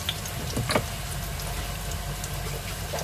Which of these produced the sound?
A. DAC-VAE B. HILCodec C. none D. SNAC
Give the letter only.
C